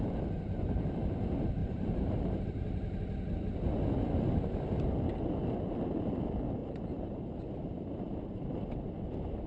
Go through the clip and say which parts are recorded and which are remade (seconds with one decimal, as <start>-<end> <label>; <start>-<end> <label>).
0.0-1.6 recorded; 1.6-2.4 remade; 2.4-6.6 recorded; 6.6-8.7 remade; 8.7-9.5 recorded